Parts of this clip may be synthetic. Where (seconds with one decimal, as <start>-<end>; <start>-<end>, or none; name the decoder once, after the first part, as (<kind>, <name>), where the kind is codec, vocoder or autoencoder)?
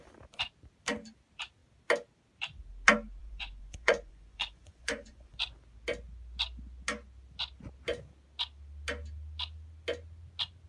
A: 3.2-5.4 (vocoder, Vocos)